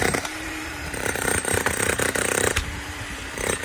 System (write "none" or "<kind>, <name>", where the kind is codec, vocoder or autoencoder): vocoder, BigVGAN v2